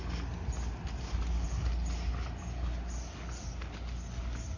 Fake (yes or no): no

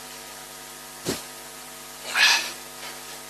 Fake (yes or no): no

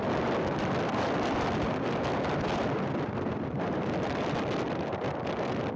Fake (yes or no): yes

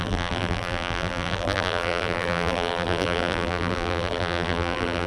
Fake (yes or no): yes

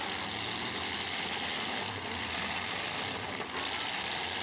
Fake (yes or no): no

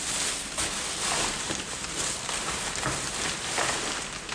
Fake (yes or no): no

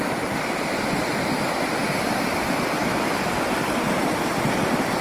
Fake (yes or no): no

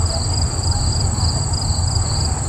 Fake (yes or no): yes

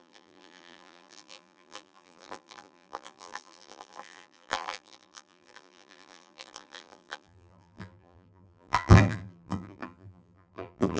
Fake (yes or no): yes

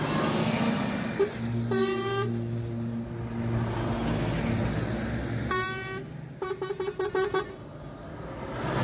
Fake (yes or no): no